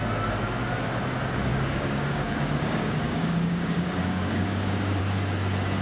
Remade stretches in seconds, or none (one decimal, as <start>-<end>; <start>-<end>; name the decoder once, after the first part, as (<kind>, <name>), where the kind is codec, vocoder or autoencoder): 1.5-5.0 (codec, DAC)